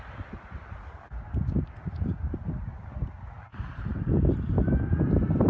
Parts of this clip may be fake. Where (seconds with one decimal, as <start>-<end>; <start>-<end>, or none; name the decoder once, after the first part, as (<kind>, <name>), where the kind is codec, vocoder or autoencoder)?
none